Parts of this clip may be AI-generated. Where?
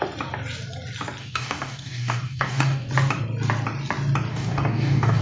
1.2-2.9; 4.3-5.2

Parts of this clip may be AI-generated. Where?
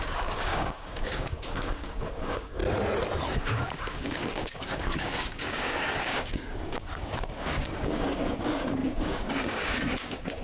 0.0-2.6; 3.3-10.4